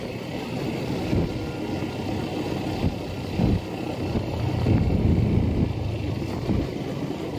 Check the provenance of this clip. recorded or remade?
recorded